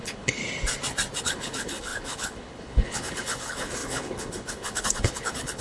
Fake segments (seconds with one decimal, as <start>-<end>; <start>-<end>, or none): 0.0-0.4; 1.2-5.6